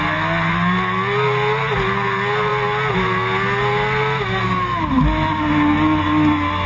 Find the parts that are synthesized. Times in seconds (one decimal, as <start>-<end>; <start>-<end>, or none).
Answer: none